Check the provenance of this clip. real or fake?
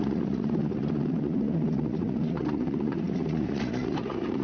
fake